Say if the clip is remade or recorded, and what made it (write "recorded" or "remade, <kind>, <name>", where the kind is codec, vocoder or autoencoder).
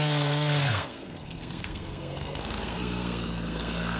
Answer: remade, codec, SNAC